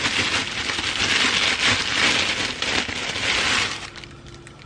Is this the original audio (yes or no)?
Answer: yes